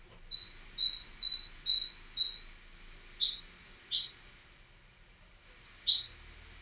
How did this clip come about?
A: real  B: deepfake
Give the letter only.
A